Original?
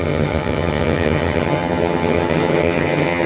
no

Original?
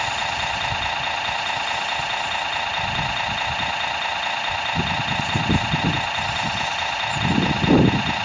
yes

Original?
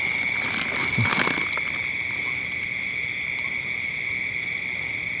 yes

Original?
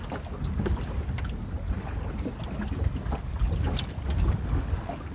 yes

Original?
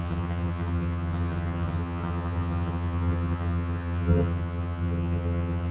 no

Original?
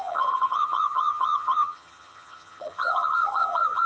no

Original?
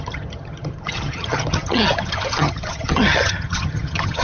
no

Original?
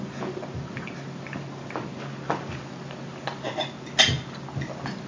yes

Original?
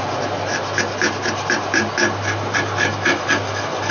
yes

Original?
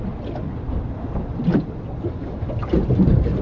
yes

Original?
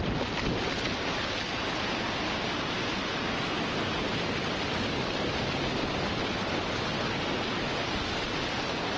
yes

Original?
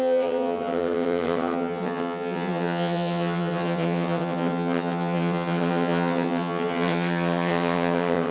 no